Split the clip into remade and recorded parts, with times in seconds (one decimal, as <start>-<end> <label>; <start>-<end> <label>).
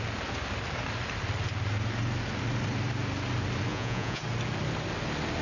0.0-3.7 recorded; 3.7-4.2 remade; 4.2-5.4 recorded